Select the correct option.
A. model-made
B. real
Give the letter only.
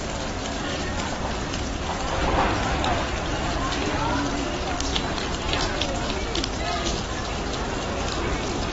B